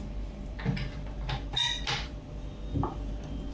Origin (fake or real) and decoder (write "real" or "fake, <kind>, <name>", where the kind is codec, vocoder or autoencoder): real